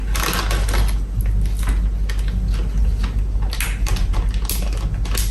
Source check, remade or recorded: recorded